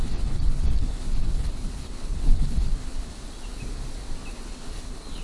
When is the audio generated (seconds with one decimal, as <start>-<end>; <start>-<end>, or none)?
0.0-3.1; 4.3-5.2